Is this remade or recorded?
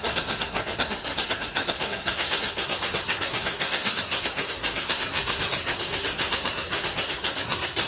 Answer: remade